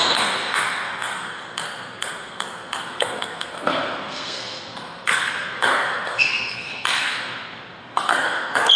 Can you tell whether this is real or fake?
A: fake